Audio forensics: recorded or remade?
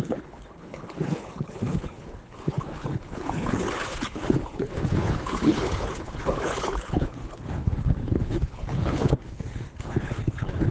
remade